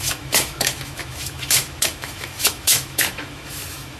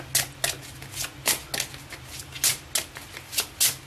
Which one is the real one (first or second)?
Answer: second